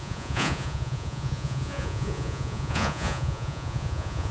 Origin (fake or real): fake